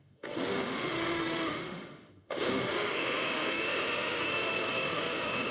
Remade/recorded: remade